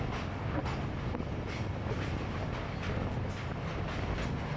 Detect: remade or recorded recorded